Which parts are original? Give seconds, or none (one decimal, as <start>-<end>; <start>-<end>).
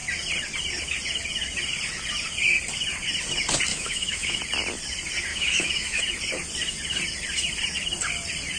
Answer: 0.0-3.7; 4.4-5.3; 6.0-8.6